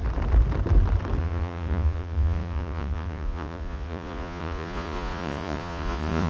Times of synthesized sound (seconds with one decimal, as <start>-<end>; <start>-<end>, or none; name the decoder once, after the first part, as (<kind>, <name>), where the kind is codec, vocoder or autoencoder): 1.2-6.3 (vocoder, Vocos)